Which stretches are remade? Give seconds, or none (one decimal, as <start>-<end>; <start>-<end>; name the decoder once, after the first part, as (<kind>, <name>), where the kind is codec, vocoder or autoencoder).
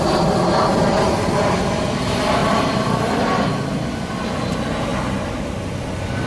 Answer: 2.4-4.1 (vocoder, BigVGAN v2); 4.9-6.3